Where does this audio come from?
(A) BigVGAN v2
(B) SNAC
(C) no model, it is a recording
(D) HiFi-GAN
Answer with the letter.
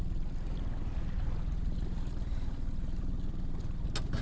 C